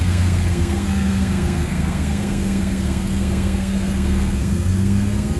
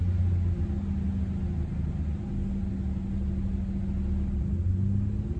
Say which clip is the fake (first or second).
first